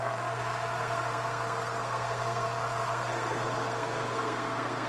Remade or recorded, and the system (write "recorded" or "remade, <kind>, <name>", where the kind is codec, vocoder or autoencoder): remade, codec, SNAC